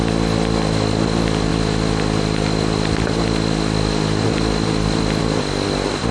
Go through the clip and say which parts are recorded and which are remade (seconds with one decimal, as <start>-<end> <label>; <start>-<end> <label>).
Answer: 0.0-6.1 recorded